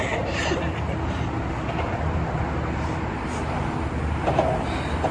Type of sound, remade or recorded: recorded